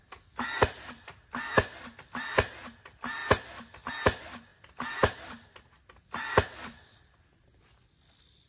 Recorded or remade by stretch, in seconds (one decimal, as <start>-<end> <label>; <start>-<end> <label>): 0.0-8.5 recorded